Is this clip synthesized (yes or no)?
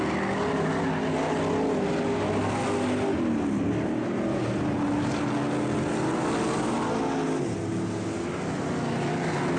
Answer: no